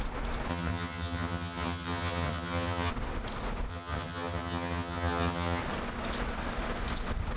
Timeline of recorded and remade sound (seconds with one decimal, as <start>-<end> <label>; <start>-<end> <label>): 0.0-0.5 recorded; 0.5-2.9 remade; 2.9-3.7 recorded; 3.7-5.6 remade; 5.6-7.4 recorded